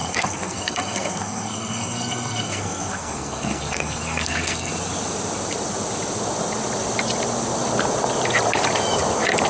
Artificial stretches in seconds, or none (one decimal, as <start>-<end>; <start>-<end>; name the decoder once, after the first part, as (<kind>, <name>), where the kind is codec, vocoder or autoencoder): 0.0-4.7 (codec, SNAC)